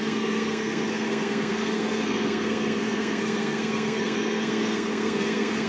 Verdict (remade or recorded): remade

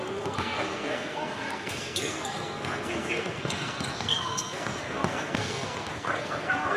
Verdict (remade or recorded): remade